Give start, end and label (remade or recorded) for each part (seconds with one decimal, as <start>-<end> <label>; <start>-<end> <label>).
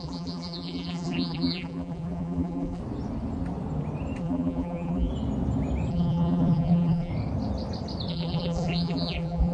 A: 0.0-2.8 remade; 2.8-4.2 recorded; 4.2-5.1 remade; 5.1-5.9 recorded; 5.9-7.1 remade; 7.1-8.1 recorded; 8.1-9.5 remade